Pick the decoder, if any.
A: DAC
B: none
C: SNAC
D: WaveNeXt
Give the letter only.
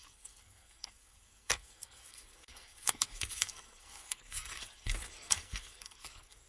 C